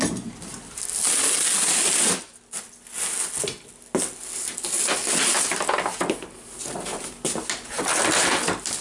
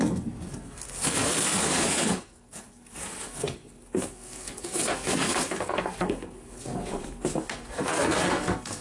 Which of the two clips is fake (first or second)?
second